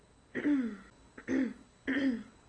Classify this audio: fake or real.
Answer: real